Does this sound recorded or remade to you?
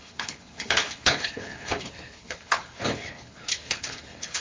remade